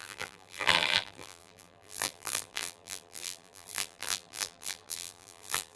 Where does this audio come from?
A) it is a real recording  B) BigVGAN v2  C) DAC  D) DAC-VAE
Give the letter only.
B